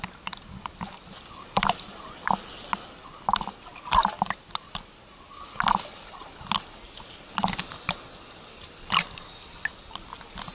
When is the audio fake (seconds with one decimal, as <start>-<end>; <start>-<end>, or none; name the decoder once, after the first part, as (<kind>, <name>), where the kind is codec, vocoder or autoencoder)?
none